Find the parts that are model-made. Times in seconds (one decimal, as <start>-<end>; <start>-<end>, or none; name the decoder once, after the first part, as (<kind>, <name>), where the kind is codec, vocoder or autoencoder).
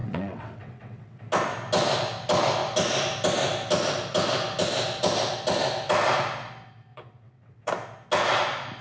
0.0-1.2 (vocoder, WaveNeXt); 6.9-7.7